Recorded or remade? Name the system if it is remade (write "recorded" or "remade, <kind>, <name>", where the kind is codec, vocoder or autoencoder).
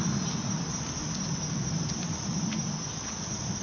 recorded